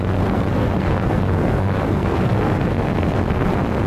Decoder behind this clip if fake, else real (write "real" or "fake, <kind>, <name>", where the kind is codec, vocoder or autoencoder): fake, codec, SNAC